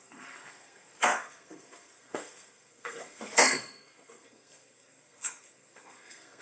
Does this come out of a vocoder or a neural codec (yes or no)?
yes